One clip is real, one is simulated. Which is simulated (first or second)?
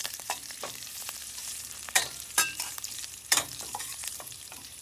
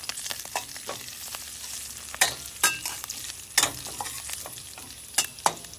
first